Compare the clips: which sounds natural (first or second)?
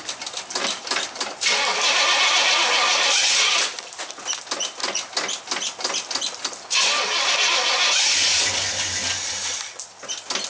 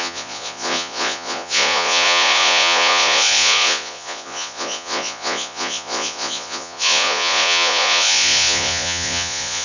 first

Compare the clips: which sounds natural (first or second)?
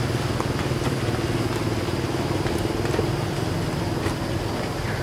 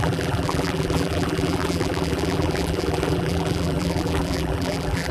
first